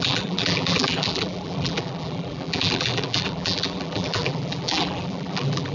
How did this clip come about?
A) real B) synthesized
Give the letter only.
B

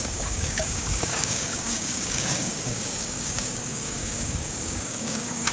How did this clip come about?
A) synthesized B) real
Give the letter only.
A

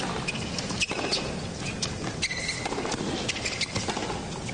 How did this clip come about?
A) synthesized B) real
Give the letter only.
B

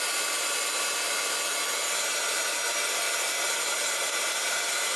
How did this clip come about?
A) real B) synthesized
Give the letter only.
B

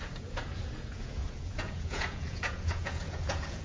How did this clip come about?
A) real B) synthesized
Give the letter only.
B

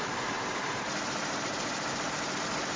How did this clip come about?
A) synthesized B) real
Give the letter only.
B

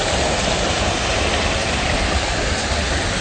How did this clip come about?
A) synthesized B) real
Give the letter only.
B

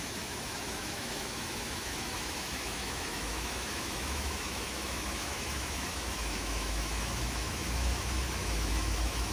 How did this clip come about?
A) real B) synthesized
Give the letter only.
B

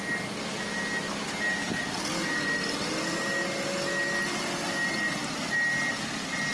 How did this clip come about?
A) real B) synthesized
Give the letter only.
A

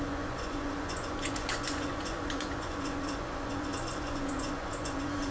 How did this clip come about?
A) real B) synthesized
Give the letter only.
B